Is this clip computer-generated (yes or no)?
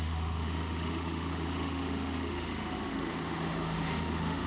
yes